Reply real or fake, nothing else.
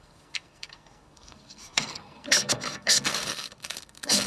fake